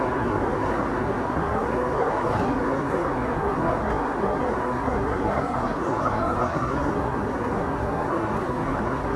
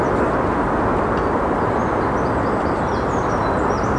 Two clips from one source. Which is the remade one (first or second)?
first